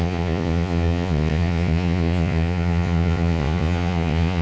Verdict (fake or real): fake